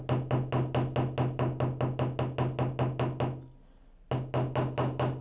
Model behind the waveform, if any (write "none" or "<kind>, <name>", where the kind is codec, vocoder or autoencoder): none